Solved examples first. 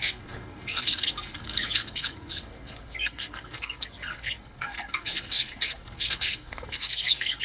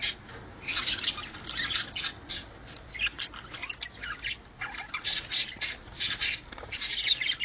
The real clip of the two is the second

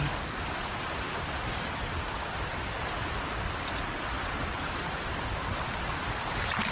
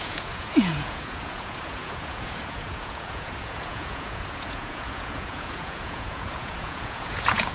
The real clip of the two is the first